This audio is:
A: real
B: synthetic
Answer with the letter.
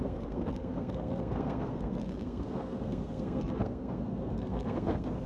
B